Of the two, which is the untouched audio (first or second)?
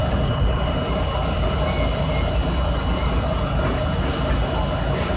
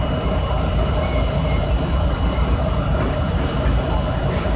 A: first